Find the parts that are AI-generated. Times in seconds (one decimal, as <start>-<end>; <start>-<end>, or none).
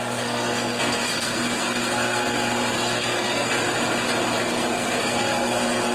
0.0-3.5; 4.4-5.9